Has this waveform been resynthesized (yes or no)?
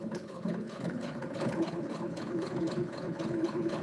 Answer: yes